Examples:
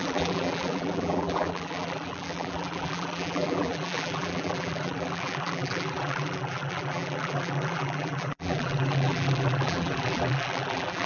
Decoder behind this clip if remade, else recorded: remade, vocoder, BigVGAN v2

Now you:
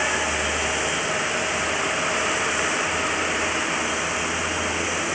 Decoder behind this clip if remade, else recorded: recorded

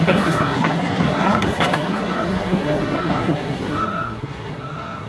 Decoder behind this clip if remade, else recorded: remade, codec, SNAC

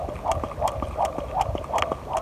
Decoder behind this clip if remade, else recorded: recorded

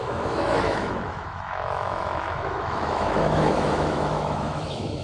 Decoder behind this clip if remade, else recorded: remade, autoencoder, DAC-VAE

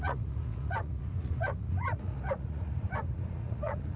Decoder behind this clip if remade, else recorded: remade, vocoder, Vocos